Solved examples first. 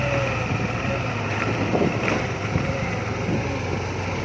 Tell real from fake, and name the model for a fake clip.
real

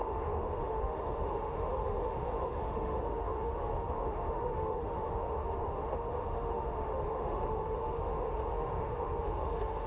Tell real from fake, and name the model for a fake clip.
fake, autoencoder, DAC-VAE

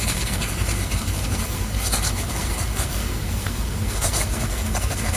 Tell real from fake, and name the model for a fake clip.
fake, codec, SNAC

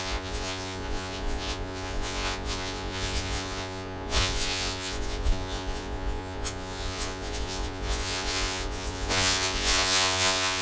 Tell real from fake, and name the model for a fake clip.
fake, vocoder, Vocos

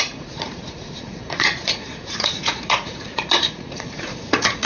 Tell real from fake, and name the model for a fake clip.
fake, vocoder, Vocos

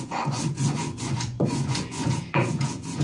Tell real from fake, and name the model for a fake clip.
fake, vocoder, Vocos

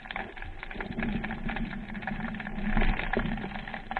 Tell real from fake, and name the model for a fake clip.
real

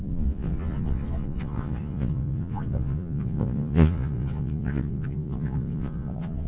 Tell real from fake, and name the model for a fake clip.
fake, vocoder, Vocos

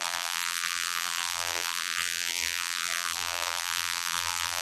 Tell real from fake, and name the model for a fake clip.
fake, vocoder, BigVGAN v2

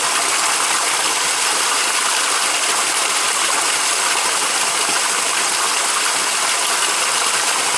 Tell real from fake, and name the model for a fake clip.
real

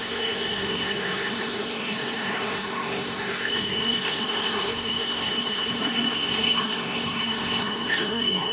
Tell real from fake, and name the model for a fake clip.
fake, codec, SNAC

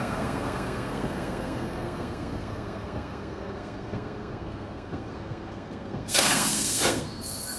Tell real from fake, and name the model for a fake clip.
fake, codec, SNAC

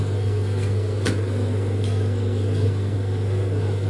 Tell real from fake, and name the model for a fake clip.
fake, codec, SNAC